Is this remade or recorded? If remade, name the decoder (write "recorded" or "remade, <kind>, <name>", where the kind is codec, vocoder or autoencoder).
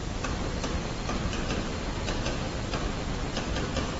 recorded